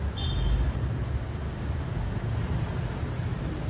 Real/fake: real